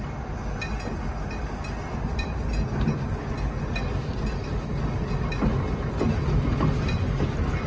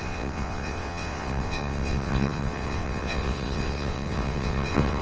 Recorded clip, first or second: first